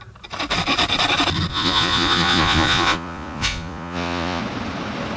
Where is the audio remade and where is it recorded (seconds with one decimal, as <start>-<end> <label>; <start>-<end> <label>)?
0.0-1.5 recorded; 1.5-4.4 remade; 4.4-5.2 recorded